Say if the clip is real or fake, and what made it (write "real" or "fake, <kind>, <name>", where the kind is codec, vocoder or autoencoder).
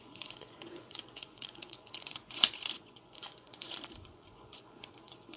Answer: fake, vocoder, Vocos